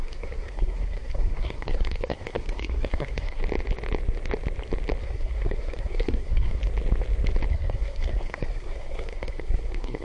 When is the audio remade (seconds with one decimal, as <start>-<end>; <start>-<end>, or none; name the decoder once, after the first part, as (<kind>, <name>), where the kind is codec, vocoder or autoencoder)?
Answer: 0.0-3.4 (codec, SNAC); 5.0-6.6; 7.5-10.0